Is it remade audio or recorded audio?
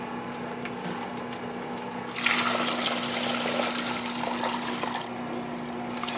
recorded